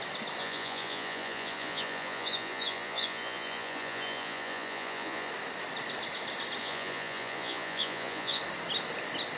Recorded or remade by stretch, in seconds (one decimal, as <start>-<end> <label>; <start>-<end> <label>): 0.0-0.4 recorded; 0.4-5.3 remade; 5.3-6.6 recorded; 6.6-8.4 remade; 8.4-9.4 recorded